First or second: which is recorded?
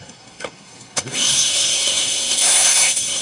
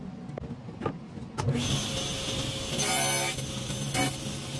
second